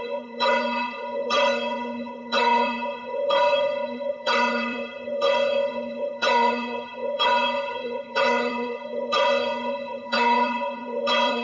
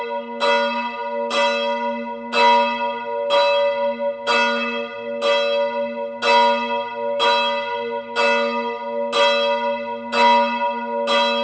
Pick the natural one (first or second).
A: second